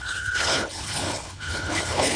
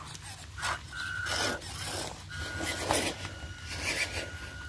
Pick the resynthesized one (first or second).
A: first